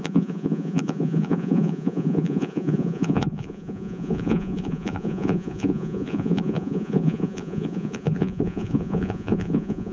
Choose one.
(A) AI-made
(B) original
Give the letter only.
A